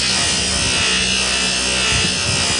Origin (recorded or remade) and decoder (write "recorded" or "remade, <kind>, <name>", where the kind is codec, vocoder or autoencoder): recorded